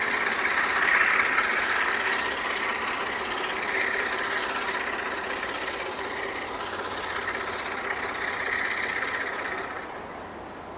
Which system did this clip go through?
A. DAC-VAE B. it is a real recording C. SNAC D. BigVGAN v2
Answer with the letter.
B